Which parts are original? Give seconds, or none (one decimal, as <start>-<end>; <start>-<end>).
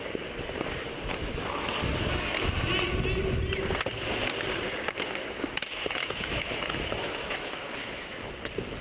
0.0-1.1; 1.7-6.0; 8.4-8.8